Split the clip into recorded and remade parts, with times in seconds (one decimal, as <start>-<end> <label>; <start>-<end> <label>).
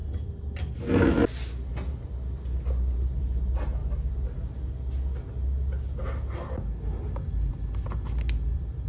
0.0-8.9 recorded